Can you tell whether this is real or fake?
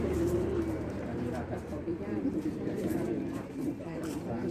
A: fake